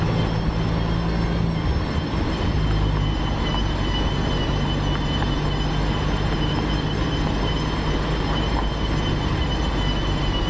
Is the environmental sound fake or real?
real